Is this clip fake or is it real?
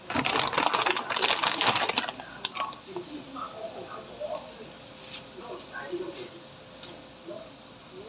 real